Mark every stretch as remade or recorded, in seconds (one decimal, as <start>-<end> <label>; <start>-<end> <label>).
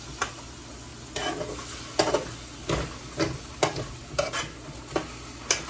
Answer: 0.0-5.7 recorded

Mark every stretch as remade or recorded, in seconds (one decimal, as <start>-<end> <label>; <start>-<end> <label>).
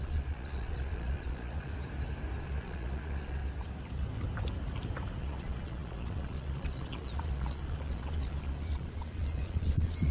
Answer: 0.0-1.7 remade; 1.7-2.4 recorded; 2.4-3.4 remade; 3.4-5.2 recorded; 5.2-10.1 remade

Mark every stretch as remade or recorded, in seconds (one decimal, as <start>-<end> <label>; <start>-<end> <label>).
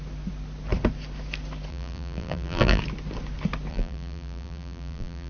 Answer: 0.0-1.7 recorded; 1.7-2.8 remade; 2.8-3.7 recorded; 3.7-5.3 remade